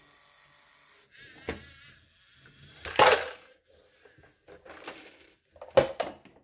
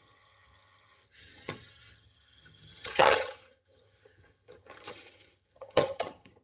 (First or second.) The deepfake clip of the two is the second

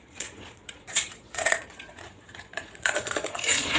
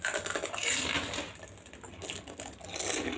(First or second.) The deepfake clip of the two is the first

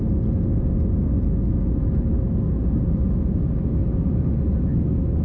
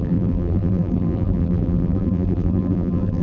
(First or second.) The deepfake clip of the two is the second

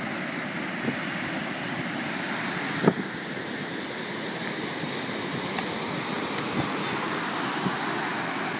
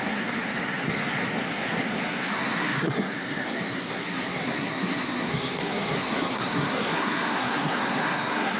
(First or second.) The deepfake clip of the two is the second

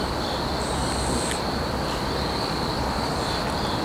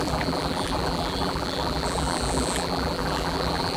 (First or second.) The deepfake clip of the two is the second